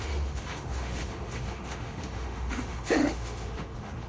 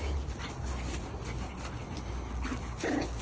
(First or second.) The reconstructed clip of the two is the first